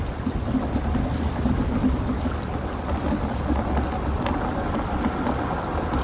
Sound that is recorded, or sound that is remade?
recorded